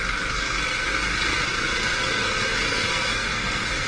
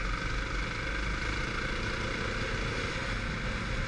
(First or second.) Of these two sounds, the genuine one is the second